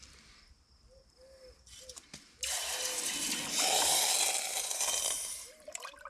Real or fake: real